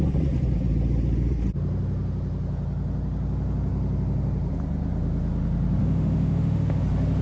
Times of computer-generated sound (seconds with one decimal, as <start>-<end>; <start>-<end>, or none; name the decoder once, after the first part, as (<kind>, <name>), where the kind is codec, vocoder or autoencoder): 5.8-6.8 (autoencoder, DAC-VAE)